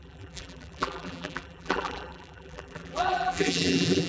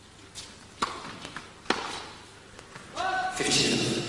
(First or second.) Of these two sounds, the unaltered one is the second